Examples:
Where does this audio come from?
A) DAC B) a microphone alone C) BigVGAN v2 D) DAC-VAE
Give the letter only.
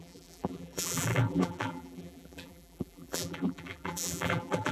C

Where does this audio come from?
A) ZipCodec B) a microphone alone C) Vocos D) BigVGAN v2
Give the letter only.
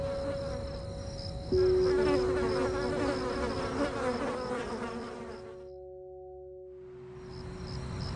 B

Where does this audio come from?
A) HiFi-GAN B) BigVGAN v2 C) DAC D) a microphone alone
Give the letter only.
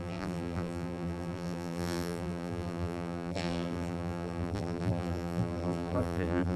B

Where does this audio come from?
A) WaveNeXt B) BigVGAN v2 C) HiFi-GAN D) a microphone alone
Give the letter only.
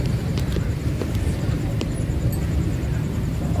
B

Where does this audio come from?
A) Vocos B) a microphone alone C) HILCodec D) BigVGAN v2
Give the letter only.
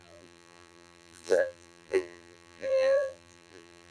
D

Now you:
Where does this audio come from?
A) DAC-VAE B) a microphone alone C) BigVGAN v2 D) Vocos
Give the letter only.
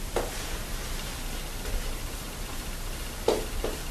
B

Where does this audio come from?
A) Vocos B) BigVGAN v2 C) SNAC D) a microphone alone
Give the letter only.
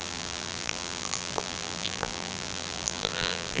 B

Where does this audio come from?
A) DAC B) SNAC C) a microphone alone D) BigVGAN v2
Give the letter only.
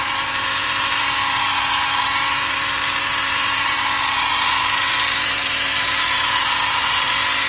D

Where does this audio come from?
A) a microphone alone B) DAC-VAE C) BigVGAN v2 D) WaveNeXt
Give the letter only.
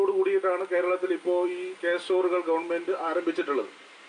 A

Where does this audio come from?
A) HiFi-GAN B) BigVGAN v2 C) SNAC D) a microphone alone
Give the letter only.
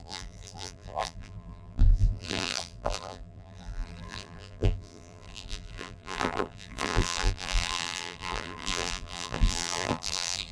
B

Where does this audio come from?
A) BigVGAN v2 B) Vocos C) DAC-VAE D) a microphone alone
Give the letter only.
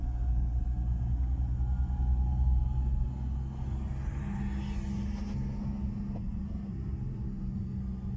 D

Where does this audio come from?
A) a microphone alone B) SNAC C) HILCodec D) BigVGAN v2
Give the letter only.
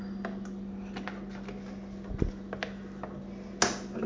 A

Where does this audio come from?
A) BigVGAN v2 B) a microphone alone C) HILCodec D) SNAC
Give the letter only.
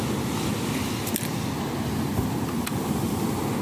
B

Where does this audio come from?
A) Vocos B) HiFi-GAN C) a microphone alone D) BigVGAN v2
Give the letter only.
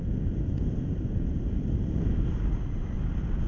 C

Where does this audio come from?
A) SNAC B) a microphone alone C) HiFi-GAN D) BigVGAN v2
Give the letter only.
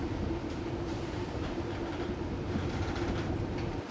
D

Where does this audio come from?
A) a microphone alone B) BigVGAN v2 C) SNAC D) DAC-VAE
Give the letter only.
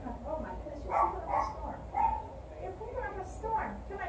A